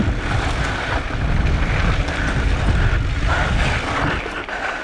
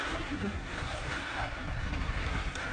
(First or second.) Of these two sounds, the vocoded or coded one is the second